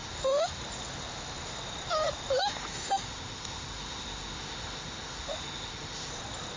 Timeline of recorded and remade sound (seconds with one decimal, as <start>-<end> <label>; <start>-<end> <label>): 0.0-0.6 remade; 0.6-2.4 recorded; 2.4-6.1 remade; 6.1-6.6 recorded